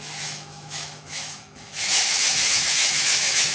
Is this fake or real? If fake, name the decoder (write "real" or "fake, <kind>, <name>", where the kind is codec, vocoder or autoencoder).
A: fake, autoencoder, DAC-VAE